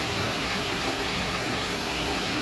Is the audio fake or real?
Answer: fake